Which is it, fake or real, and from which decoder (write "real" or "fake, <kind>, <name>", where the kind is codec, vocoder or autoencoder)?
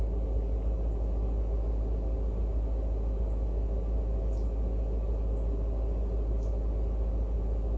real